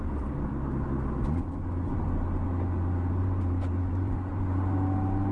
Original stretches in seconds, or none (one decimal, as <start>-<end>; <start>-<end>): 0.5-3.1